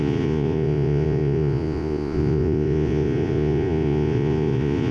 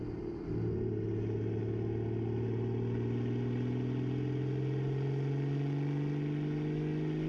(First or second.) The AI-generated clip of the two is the first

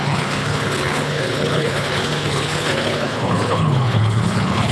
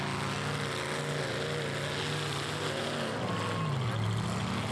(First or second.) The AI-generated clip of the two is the first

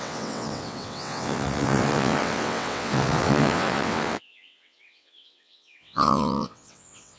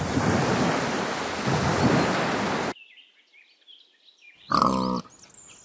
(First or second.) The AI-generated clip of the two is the first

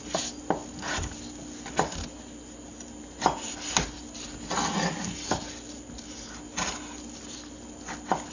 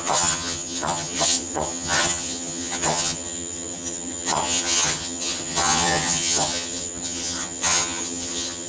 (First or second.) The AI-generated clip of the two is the second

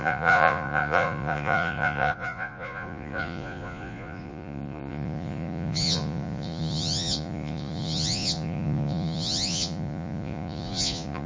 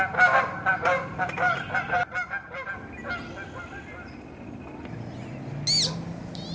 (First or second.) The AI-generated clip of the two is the first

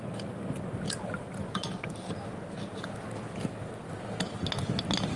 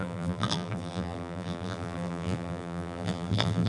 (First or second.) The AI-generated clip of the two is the second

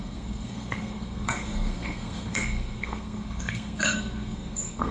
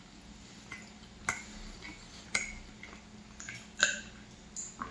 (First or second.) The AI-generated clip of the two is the first